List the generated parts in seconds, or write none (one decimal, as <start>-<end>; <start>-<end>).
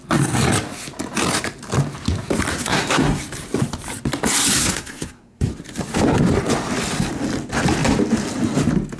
2.5-3.2; 4.6-5.5